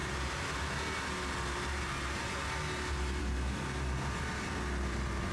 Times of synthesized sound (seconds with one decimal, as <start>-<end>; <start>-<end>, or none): none